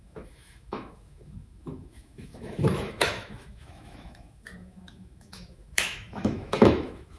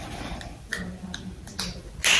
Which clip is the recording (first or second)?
second